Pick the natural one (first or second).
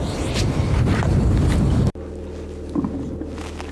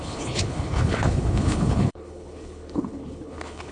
first